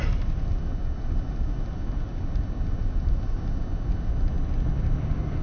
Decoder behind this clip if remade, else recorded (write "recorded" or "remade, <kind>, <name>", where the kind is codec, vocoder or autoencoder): recorded